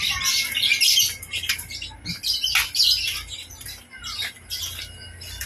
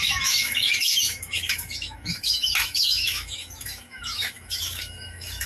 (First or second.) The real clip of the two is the first